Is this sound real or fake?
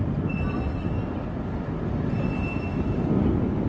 real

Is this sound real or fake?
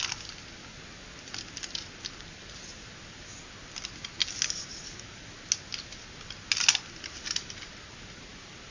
real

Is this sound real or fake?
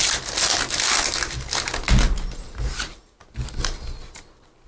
real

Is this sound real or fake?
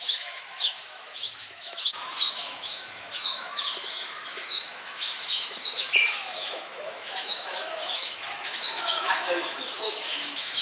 fake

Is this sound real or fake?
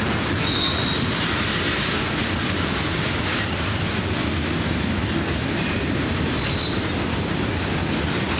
real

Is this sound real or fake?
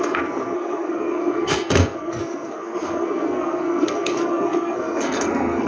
fake